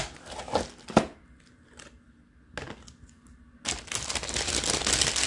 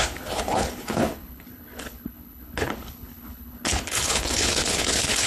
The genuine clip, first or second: first